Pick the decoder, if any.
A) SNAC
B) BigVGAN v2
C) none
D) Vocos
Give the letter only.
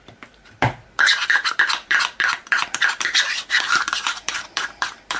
B